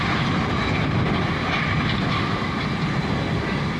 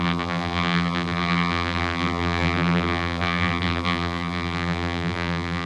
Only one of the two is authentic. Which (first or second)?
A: first